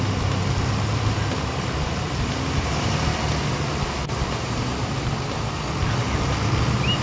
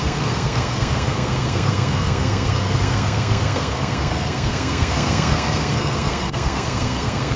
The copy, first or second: second